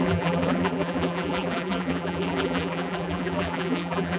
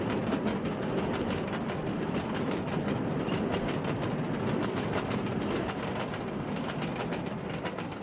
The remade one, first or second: first